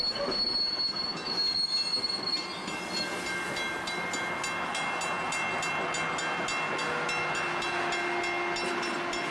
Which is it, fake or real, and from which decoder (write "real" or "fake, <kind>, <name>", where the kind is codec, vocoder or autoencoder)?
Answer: real